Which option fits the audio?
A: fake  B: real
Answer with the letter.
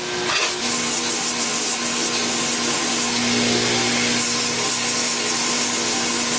B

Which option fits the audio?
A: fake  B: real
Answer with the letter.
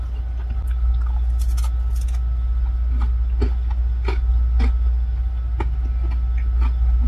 B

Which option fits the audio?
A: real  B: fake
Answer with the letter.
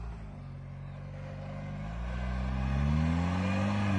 A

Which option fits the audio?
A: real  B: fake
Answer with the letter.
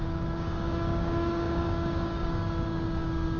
B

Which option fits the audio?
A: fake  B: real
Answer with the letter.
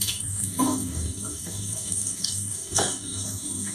A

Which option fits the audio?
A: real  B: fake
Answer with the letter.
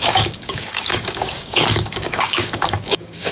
B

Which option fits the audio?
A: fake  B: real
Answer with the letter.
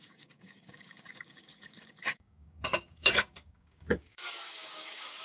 A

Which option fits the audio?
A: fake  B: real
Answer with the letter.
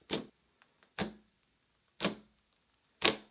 B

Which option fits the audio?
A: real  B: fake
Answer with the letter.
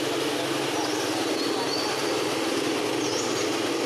A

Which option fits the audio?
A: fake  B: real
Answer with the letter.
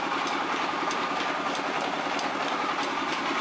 B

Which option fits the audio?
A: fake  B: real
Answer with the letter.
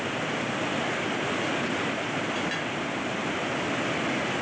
B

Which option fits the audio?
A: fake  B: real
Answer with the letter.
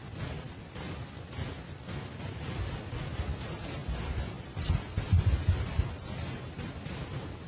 B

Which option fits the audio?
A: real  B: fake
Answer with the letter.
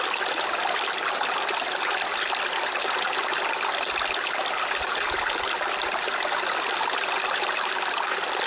A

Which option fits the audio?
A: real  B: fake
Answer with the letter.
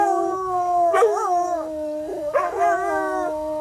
B